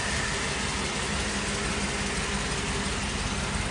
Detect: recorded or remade recorded